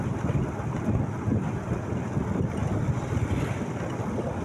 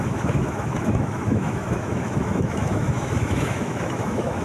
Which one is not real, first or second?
second